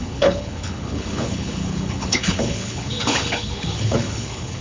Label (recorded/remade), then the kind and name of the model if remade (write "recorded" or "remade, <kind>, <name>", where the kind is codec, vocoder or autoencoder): remade, codec, HILCodec